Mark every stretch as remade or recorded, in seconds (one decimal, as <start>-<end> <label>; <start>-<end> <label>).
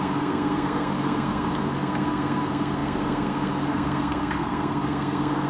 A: 0.0-5.5 remade